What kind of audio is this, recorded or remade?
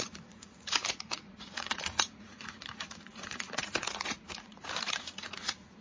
remade